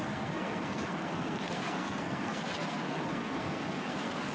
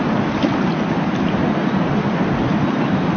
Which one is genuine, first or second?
second